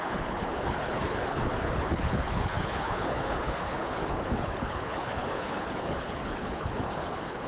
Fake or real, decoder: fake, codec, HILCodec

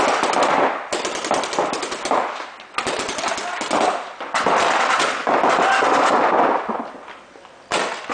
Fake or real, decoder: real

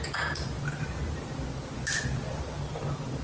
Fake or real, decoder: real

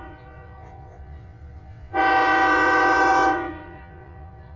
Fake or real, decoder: fake, vocoder, WaveNeXt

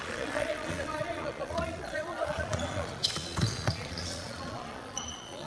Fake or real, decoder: fake, vocoder, Vocos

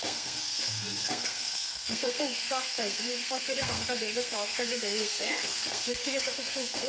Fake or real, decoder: fake, codec, SNAC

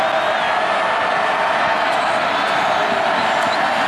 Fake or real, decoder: real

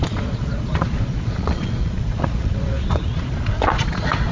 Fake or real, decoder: fake, vocoder, Vocos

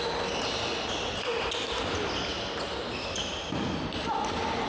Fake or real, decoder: real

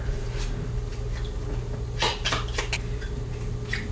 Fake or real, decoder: real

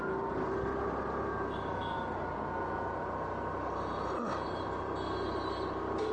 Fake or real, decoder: real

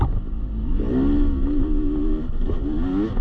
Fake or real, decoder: real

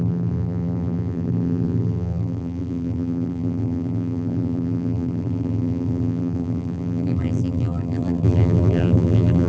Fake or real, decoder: fake, vocoder, BigVGAN v2